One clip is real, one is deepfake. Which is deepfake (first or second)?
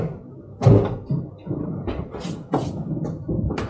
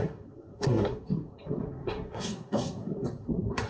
second